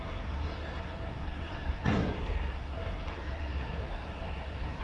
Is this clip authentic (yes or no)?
no